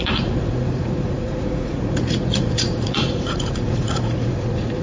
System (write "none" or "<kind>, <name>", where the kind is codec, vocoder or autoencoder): vocoder, Vocos